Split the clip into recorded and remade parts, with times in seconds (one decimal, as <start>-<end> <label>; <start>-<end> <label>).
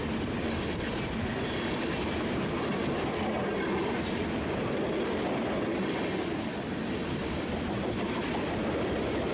0.0-9.3 recorded